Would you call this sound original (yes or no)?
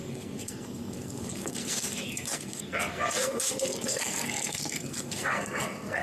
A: no